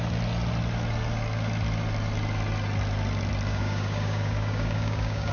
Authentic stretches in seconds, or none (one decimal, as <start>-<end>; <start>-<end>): 0.0-3.5